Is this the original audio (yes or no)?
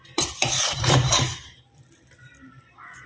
no